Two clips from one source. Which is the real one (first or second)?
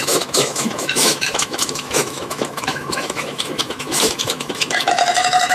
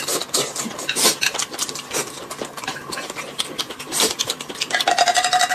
second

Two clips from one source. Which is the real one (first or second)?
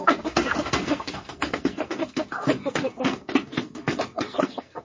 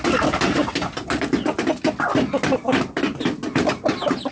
second